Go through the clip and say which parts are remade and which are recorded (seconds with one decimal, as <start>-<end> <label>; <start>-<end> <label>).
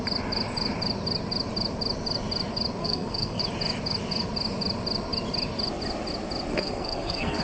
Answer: 0.0-2.8 recorded; 2.8-3.4 remade; 3.4-6.5 recorded; 6.5-7.4 remade